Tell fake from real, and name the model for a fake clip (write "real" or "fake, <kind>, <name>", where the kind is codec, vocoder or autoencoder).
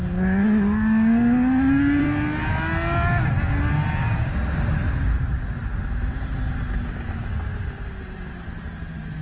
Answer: real